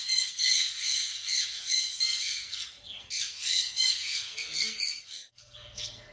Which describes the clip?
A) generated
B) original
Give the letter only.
A